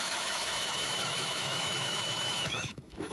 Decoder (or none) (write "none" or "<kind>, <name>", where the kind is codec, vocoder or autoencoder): autoencoder, DAC-VAE